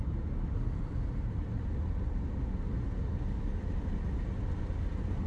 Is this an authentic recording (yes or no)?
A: yes